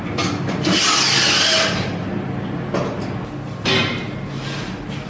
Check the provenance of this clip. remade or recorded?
recorded